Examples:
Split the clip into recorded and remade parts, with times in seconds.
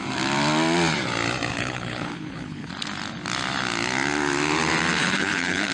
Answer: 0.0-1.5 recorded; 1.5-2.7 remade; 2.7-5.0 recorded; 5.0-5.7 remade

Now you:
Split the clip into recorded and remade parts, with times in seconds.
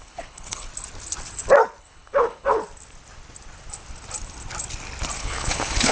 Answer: 0.0-0.7 remade; 0.7-1.8 recorded; 1.8-2.6 remade; 2.6-5.2 recorded; 5.2-5.9 remade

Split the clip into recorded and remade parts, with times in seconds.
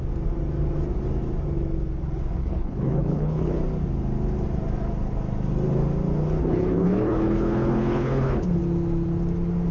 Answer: 0.0-2.4 recorded; 2.4-3.6 remade; 3.6-6.4 recorded; 6.4-8.6 remade; 8.6-9.7 recorded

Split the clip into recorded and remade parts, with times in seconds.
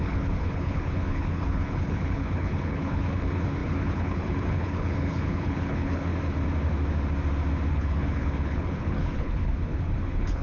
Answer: 0.0-6.1 remade; 6.1-7.7 recorded; 7.7-10.4 remade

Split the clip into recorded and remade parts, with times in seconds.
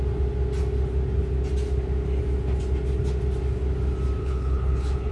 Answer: 0.0-4.2 recorded; 4.2-5.1 remade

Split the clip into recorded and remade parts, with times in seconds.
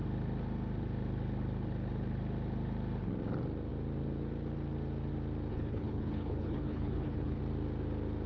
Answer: 0.0-5.5 recorded; 5.5-7.4 remade; 7.4-8.3 recorded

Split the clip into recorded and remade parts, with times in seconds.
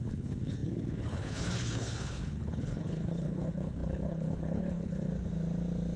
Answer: 0.0-5.1 remade; 5.1-6.0 recorded